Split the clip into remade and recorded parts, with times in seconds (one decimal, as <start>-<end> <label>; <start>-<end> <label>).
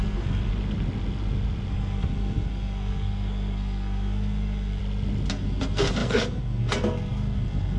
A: 0.0-0.5 remade; 0.5-1.7 recorded; 1.7-4.8 remade; 4.8-5.3 recorded; 5.3-7.8 remade